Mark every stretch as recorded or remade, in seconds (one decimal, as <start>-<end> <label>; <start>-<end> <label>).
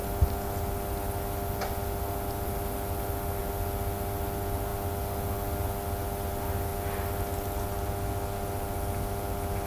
0.0-9.7 recorded